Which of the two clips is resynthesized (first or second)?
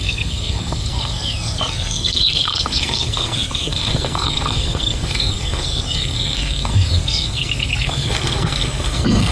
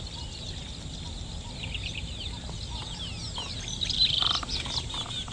first